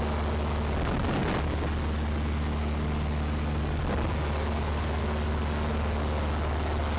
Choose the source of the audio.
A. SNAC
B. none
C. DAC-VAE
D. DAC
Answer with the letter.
B